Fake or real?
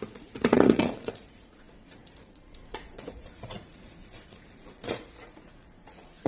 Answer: fake